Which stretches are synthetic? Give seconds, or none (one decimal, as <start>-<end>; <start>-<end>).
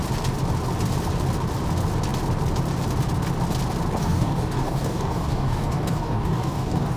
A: 4.0-7.0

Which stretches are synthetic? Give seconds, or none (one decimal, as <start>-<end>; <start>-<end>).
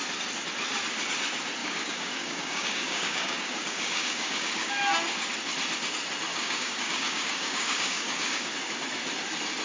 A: 1.6-4.7; 6.3-8.5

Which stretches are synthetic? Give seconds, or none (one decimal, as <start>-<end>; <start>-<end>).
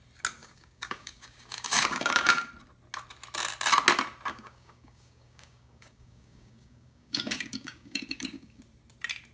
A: 0.4-2.5; 4.3-8.6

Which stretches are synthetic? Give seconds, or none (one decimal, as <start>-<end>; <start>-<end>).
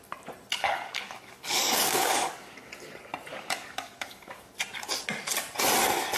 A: 0.6-2.7; 3.3-4.5